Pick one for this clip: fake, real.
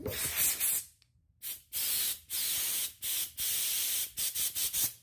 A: real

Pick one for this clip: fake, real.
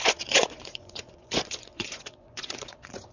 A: fake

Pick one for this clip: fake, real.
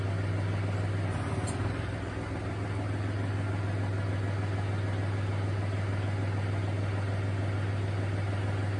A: real